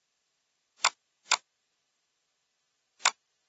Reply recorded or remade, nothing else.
recorded